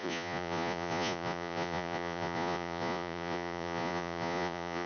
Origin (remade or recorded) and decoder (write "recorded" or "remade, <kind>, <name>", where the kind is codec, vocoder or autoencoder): remade, vocoder, Vocos